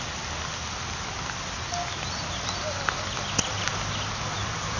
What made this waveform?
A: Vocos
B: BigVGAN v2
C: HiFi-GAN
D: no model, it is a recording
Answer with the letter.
D